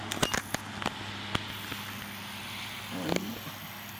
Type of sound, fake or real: real